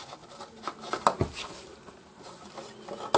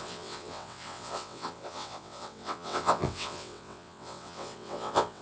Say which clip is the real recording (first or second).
first